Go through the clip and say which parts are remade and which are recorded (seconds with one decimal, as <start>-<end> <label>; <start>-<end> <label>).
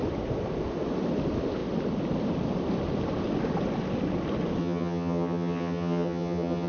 0.0-4.6 recorded; 4.6-6.7 remade